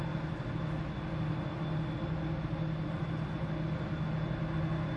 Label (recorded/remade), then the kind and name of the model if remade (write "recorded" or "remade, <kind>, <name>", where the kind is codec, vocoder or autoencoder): recorded